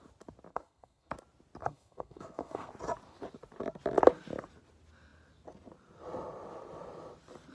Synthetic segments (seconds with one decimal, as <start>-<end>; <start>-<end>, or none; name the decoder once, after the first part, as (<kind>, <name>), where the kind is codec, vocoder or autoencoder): 0.5-1.1 (codec, SNAC); 1.6-2.7